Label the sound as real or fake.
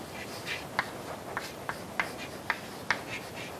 real